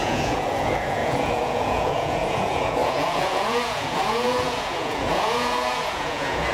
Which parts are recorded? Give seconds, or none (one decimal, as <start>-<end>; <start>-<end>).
none